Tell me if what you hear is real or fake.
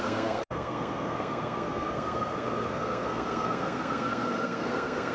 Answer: fake